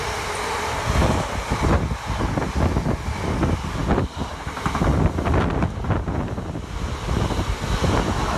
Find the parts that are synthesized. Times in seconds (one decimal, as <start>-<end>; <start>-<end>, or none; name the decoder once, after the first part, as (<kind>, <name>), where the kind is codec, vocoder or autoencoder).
none